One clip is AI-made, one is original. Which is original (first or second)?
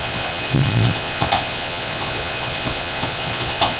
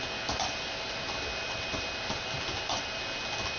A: second